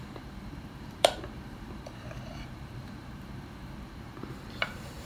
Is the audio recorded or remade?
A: remade